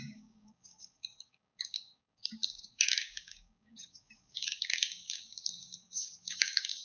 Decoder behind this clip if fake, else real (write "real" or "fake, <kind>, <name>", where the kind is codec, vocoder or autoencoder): fake, codec, DAC